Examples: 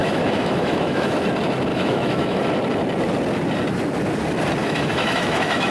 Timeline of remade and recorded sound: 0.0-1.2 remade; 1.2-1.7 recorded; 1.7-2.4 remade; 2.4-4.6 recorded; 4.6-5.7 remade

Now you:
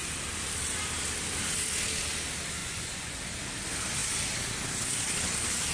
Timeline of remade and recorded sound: 0.0-2.6 recorded; 2.6-3.2 remade; 3.2-5.7 recorded

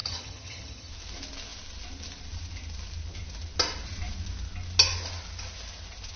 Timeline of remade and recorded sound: 0.0-0.9 remade; 0.9-6.2 recorded

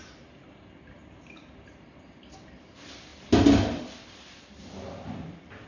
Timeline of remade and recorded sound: 0.0-5.7 recorded

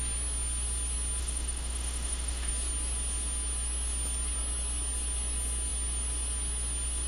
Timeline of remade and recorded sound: 0.0-1.2 recorded; 1.2-2.5 remade; 2.5-7.1 recorded

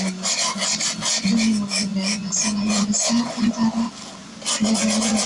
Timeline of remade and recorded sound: 0.0-1.9 recorded; 1.9-3.5 remade; 3.5-5.3 recorded

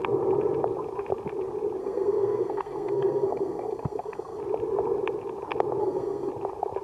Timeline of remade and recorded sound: 0.0-1.8 recorded; 1.8-4.4 remade; 4.4-5.8 recorded; 5.8-6.3 remade; 6.3-6.8 recorded

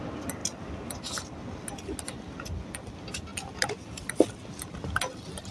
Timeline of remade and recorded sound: 0.0-5.5 recorded